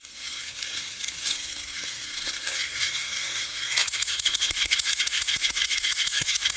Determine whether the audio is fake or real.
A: fake